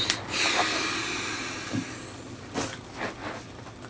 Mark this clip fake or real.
real